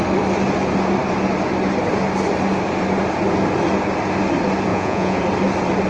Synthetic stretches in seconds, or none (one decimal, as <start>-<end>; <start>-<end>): 4.7-5.2